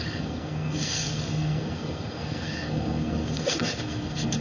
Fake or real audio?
fake